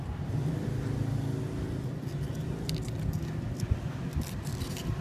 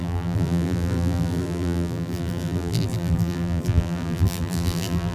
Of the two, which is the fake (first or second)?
second